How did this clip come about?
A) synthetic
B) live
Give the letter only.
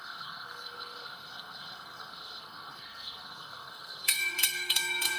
A